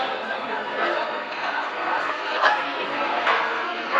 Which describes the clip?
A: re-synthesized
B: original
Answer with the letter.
A